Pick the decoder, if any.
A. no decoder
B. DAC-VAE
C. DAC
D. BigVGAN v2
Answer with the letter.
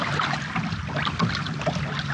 A